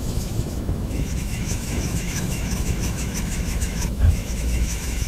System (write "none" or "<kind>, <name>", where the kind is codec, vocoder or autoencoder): autoencoder, DAC-VAE